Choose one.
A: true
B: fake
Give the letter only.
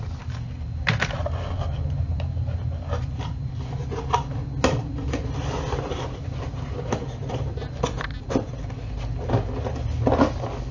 A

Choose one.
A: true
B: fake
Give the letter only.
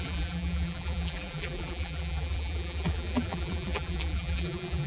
B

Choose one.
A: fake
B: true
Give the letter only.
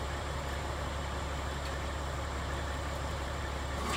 A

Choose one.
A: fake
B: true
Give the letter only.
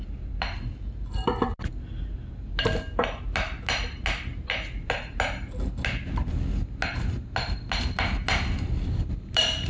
B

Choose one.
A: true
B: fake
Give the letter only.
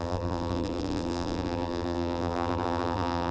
B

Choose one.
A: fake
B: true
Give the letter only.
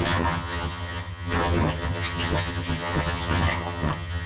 A